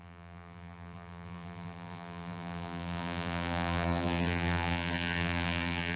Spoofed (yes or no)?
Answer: yes